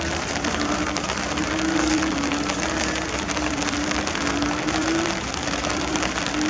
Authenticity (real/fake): fake